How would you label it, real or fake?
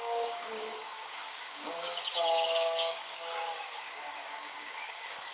fake